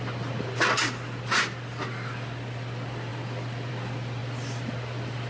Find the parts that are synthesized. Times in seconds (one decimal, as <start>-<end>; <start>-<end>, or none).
none